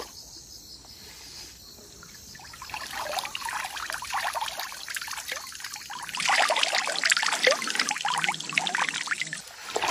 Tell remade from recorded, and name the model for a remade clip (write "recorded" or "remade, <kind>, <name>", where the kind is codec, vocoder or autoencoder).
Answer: recorded